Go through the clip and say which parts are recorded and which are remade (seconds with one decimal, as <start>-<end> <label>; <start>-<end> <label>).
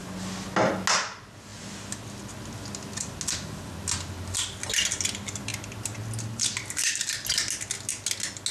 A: 0.0-8.5 recorded